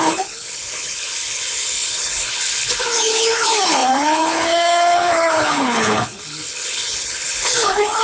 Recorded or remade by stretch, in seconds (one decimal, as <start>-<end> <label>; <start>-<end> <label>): 0.0-8.0 remade